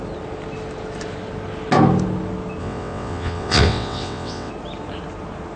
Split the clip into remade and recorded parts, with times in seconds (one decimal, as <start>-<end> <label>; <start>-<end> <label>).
0.0-2.6 recorded; 2.6-4.5 remade; 4.5-5.6 recorded